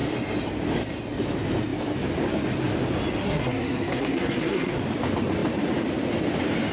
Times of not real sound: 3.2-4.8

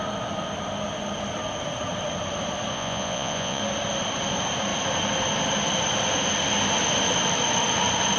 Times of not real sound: 2.7-3.6